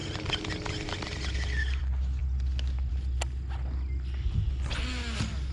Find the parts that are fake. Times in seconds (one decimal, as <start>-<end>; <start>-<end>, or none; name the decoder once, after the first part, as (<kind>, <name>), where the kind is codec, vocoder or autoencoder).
none